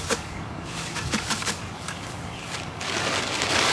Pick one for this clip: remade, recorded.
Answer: remade